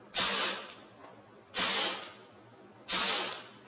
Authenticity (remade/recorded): recorded